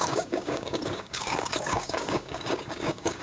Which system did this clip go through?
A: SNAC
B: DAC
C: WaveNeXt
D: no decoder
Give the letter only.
B